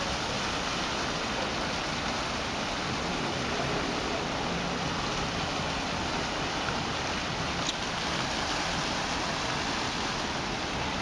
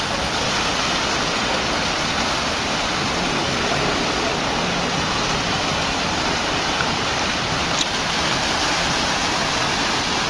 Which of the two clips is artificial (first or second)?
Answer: second